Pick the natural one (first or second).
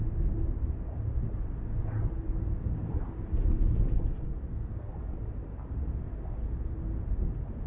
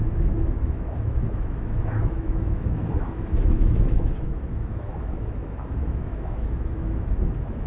first